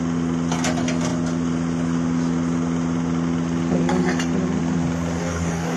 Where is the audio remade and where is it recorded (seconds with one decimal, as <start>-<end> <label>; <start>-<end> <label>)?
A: 0.0-5.2 recorded; 5.2-5.8 remade